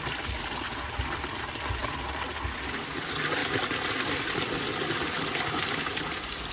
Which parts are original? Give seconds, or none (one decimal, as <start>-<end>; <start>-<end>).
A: 0.0-6.5